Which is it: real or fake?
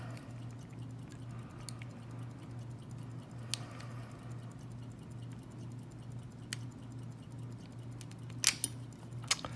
real